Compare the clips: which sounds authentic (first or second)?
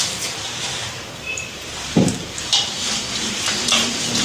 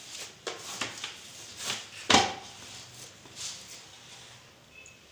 second